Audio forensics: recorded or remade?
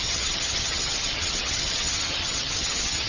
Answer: remade